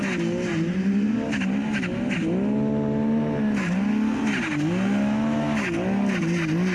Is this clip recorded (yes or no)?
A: yes